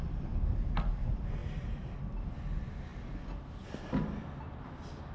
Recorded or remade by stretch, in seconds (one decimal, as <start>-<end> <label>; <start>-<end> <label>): 0.0-5.1 recorded